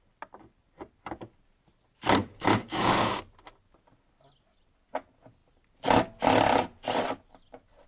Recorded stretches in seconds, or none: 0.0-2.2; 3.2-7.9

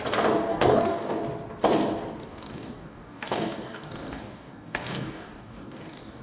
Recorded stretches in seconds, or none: 0.0-0.5; 1.2-2.2

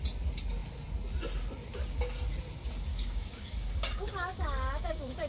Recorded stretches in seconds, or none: 0.0-2.9

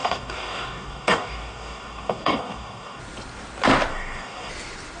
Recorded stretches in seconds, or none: 3.0-3.9; 4.5-5.0

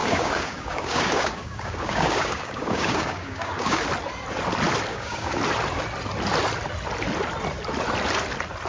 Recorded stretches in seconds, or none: 3.8-4.9; 5.4-8.7

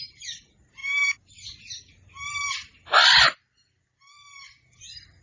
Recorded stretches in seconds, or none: 0.0-5.2